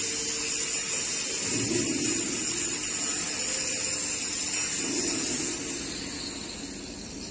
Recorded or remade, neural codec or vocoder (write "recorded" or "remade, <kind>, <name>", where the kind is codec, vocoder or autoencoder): recorded